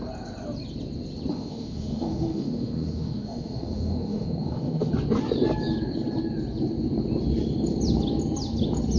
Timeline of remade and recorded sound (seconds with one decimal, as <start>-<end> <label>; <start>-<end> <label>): 0.0-1.3 recorded; 1.3-4.9 remade; 4.9-9.0 recorded